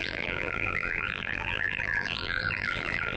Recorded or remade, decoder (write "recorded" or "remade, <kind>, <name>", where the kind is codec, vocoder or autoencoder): remade, vocoder, BigVGAN v2